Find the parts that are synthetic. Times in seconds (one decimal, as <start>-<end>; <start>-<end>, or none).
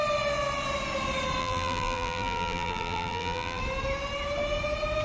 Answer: 1.4-3.6